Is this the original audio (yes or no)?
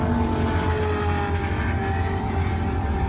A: yes